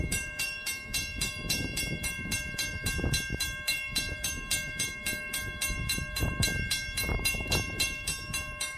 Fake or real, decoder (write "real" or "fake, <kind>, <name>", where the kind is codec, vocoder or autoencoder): fake, vocoder, BigVGAN v2